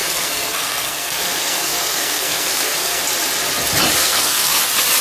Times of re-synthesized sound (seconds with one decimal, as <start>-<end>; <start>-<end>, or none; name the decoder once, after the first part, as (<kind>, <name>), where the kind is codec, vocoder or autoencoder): 0.0-3.0 (codec, SNAC); 4.0-4.6